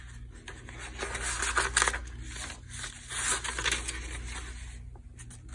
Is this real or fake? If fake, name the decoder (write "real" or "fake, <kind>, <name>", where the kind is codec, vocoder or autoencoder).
real